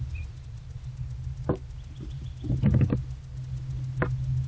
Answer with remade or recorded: recorded